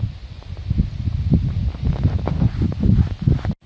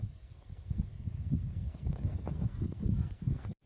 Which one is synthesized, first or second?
second